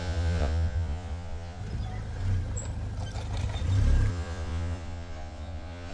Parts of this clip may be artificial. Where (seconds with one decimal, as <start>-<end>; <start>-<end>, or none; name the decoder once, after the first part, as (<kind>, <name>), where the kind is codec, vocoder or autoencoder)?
0.0-1.6 (vocoder, Vocos); 4.1-5.9